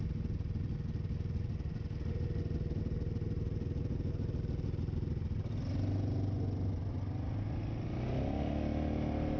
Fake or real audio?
real